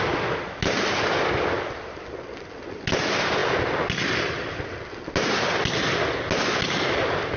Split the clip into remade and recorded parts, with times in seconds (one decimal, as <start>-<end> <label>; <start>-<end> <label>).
0.0-7.4 recorded